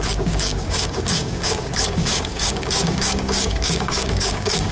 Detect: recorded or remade remade